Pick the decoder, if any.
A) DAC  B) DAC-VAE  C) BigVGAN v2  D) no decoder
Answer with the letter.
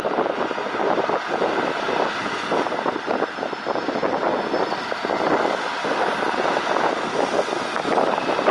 D